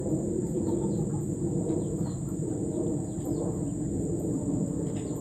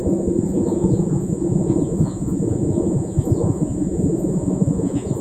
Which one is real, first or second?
first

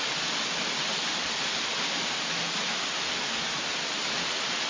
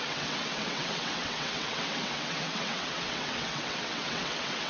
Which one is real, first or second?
first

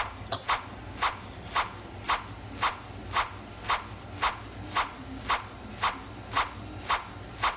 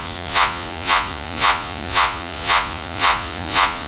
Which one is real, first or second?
first